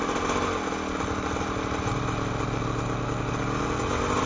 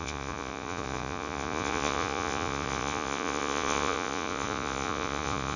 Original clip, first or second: first